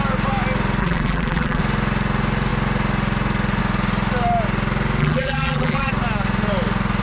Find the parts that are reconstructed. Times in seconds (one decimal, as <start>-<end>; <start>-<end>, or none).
0.8-1.6; 5.0-5.9